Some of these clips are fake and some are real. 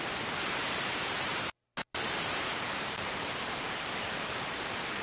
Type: fake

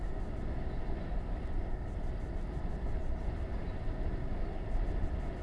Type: real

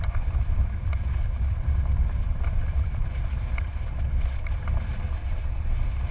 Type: real